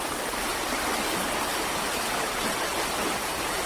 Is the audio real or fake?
real